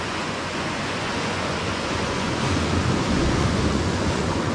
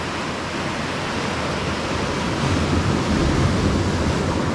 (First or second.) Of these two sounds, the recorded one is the second